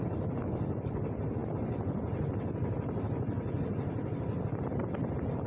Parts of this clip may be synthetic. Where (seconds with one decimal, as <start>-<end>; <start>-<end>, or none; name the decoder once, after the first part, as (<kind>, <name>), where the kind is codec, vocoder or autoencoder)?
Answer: none